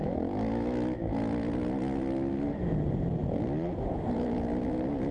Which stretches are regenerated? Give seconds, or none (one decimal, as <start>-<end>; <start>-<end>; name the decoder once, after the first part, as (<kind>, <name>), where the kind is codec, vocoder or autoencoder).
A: 0.0-1.1 (autoencoder, DAC-VAE); 4.2-5.1